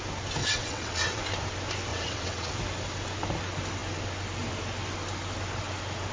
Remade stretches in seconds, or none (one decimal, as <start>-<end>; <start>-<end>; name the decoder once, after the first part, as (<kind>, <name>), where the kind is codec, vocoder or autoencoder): 0.4-1.2 (vocoder, WaveNeXt); 1.9-2.5